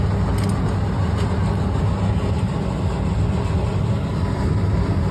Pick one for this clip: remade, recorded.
recorded